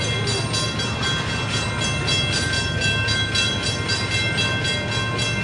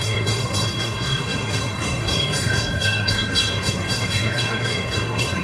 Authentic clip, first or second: first